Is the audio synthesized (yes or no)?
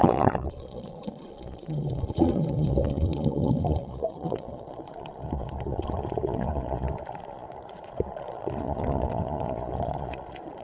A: yes